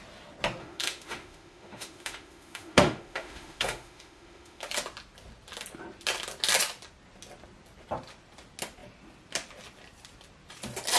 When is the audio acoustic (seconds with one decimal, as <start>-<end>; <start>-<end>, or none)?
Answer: 0.0-0.6; 4.7-11.0

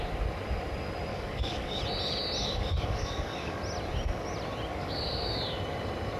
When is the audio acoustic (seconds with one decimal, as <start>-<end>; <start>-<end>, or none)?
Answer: 0.0-1.1; 1.8-2.4; 3.6-4.7; 5.4-6.2

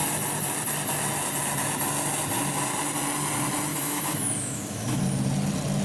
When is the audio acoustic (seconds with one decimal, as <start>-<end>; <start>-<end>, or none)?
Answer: 0.0-3.7; 5.0-5.8